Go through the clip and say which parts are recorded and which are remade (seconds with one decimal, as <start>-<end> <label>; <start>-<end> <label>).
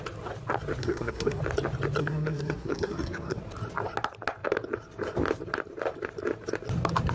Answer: 0.0-0.8 recorded; 0.8-1.4 remade; 1.4-2.0 recorded; 2.0-3.4 remade; 3.4-7.1 recorded